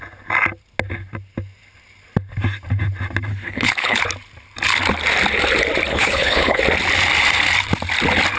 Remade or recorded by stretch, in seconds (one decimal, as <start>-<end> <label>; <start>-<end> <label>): 0.0-3.3 recorded; 3.3-4.0 remade; 4.0-5.9 recorded; 5.9-6.6 remade; 6.6-8.4 recorded